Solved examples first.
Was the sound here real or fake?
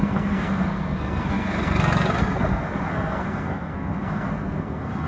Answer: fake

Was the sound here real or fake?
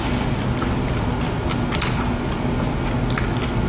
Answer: real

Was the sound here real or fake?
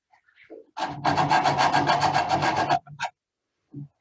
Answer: real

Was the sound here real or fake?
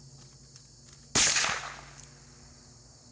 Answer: real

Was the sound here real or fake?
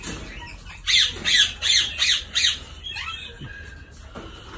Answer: real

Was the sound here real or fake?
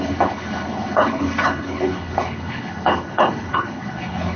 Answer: fake